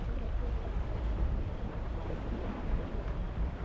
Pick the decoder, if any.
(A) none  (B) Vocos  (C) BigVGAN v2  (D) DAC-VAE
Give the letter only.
C